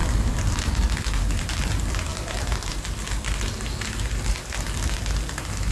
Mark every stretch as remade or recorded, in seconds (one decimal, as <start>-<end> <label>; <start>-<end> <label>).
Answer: 0.0-5.7 recorded